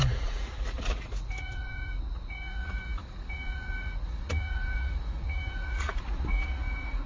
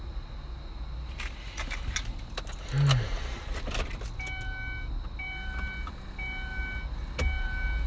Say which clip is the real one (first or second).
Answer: second